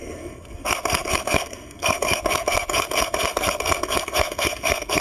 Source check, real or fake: fake